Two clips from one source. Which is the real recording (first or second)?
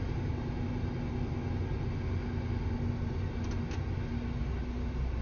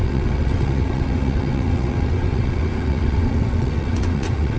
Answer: first